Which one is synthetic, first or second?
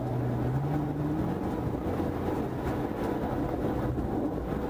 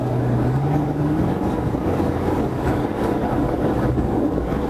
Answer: second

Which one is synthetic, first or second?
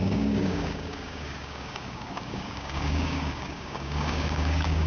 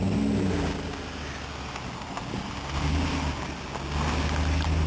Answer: first